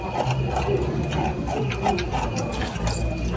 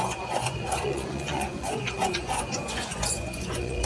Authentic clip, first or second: first